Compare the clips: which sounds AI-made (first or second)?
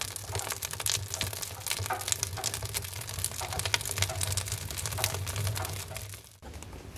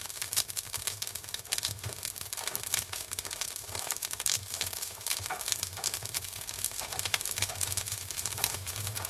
second